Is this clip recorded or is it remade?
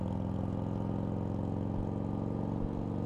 recorded